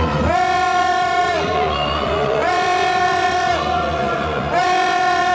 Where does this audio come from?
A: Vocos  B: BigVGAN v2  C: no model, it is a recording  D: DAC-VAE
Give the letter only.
A